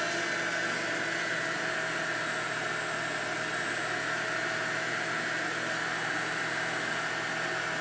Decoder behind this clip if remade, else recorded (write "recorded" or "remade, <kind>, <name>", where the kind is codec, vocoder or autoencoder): recorded